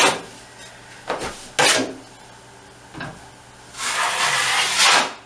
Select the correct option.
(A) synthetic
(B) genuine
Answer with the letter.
B